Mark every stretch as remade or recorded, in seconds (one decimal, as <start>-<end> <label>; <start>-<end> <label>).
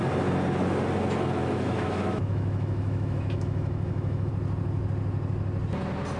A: 0.0-1.4 recorded; 1.4-4.3 remade; 4.3-6.2 recorded